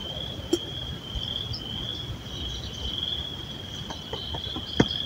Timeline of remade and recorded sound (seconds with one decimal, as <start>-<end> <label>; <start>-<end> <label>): 0.0-1.3 remade; 1.3-1.9 recorded; 1.9-5.1 remade